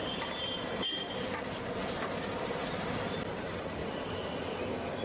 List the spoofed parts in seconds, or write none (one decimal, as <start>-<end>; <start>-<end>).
0.0-1.8; 3.2-3.8; 4.5-5.0